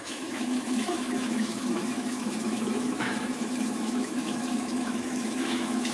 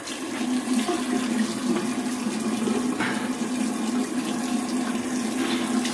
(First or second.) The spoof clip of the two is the first